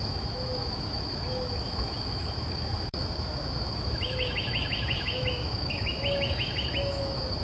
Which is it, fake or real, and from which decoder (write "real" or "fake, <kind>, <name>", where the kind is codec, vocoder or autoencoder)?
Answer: fake, autoencoder, DAC-VAE